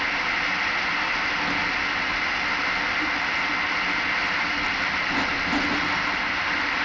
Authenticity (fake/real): real